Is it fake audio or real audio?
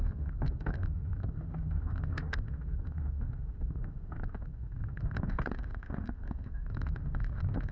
fake